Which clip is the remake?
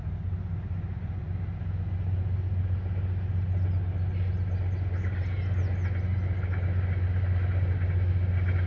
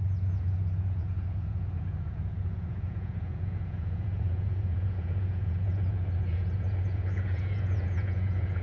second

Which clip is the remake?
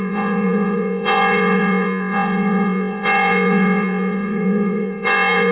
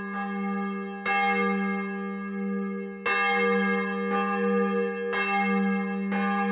first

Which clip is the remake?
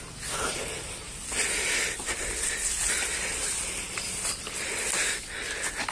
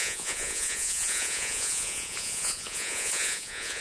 second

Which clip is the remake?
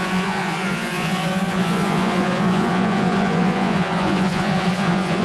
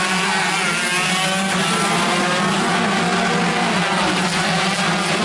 first